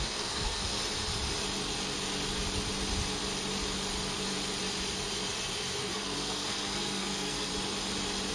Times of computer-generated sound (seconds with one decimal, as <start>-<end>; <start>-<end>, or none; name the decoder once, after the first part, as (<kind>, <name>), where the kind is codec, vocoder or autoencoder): 0.0-0.8 (codec, SNAC); 5.8-7.5